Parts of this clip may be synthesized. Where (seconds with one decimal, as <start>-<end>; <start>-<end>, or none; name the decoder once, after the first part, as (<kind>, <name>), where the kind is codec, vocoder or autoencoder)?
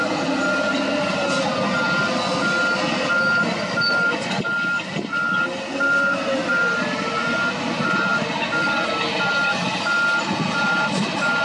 none